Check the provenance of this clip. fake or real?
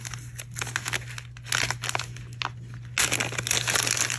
real